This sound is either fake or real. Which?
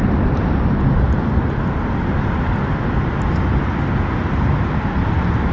real